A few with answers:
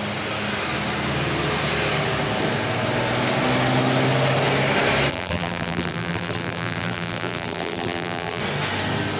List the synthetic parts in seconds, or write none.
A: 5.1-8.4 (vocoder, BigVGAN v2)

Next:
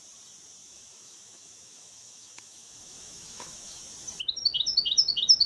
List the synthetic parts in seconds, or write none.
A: 0.6-3.9 (autoencoder, DAC-VAE)

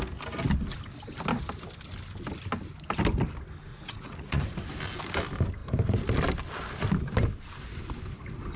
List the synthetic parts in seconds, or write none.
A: 3.7-4.4 (vocoder, Vocos)

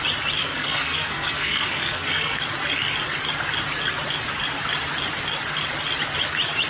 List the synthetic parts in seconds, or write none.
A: 0.4-2.4 (codec, SNAC)